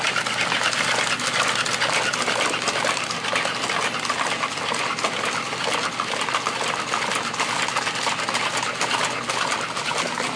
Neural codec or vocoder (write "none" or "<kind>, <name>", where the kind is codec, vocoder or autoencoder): none